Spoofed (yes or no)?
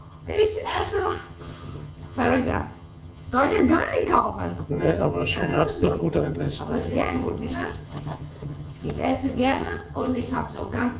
yes